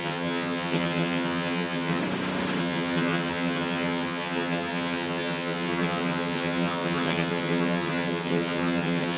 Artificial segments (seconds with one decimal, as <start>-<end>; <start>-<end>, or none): 0.0-2.0; 2.6-9.2